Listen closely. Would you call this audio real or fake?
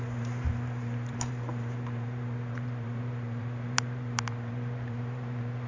fake